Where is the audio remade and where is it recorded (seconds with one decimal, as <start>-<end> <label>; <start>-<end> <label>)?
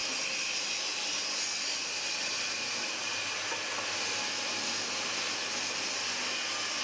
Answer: 0.0-6.8 recorded